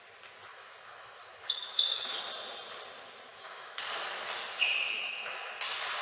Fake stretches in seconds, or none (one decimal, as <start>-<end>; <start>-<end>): 0.5-2.2; 3.3-3.8; 4.9-5.5